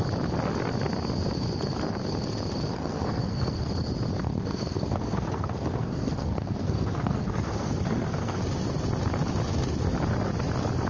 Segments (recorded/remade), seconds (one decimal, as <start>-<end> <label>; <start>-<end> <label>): 0.0-2.7 recorded; 2.7-3.7 remade; 3.7-4.2 recorded; 4.2-8.4 remade; 8.4-10.9 recorded